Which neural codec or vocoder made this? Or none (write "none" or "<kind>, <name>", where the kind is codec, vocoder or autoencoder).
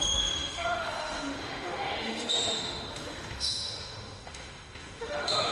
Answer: autoencoder, DAC-VAE